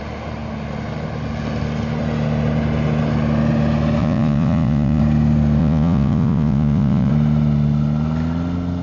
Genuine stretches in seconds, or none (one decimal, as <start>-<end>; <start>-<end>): 0.0-4.0; 5.0-5.6; 7.1-8.8